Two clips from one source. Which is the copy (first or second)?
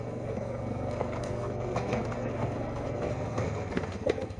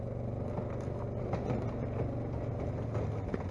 first